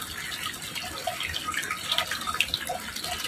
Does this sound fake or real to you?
real